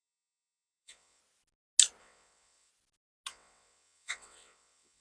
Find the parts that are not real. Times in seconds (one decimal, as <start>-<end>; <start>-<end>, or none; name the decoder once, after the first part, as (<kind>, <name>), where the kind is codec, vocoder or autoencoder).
0.0-1.2 (vocoder, WaveNeXt); 2.0-2.7; 3.3-5.0